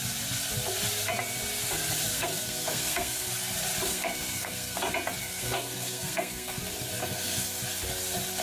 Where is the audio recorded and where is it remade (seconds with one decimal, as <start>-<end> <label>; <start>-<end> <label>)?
0.0-2.1 recorded; 2.1-3.3 remade; 3.3-3.9 recorded; 3.9-4.8 remade; 4.8-5.2 recorded; 5.2-6.6 remade; 6.6-7.0 recorded; 7.0-7.6 remade; 7.6-8.4 recorded